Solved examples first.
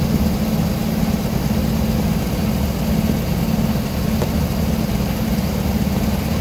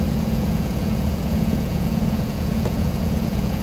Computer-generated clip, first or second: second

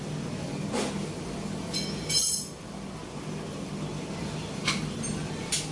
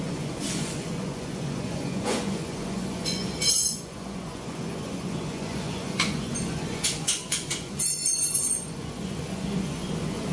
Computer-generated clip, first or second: second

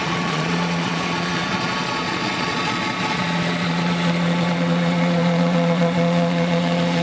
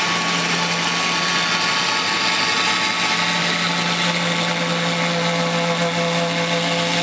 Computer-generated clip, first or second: first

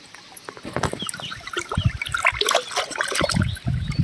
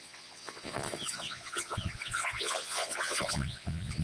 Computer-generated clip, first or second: second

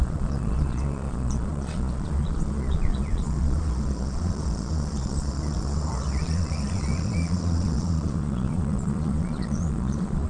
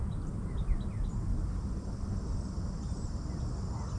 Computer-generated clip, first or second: first